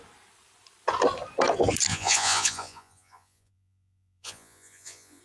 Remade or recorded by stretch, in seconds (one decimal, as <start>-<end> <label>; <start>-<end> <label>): 0.0-1.9 recorded; 1.9-5.2 remade